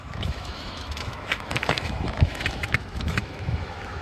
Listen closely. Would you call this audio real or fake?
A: fake